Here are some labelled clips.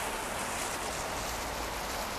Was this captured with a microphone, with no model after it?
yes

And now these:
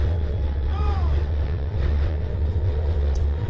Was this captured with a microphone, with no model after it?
no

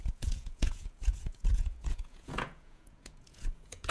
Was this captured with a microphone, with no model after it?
no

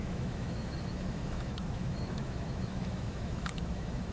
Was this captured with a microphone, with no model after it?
no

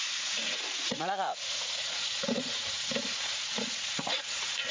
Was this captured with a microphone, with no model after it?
no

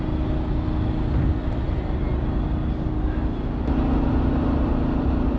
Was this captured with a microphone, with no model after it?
yes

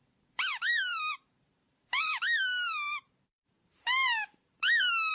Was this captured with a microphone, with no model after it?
no